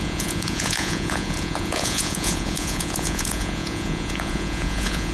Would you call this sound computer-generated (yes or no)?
yes